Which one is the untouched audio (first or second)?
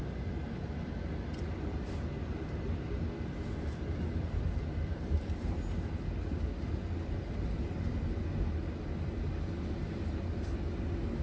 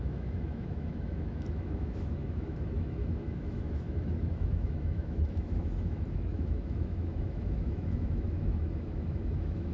first